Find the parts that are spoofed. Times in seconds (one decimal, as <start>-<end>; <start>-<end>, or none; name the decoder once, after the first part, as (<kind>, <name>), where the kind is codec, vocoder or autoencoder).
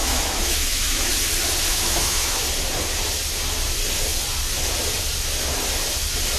0.0-1.1 (autoencoder, DAC-VAE); 1.7-2.4